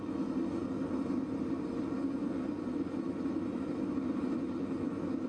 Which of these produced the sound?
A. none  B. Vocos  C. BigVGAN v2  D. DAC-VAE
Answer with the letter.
A